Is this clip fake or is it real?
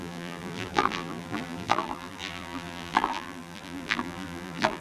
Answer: fake